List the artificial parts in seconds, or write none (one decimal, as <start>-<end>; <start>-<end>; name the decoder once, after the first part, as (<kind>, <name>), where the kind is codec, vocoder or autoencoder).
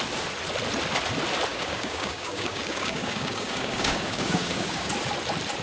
1.5-4.9 (codec, DAC)